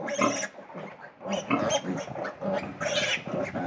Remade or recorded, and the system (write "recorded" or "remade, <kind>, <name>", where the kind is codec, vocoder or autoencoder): recorded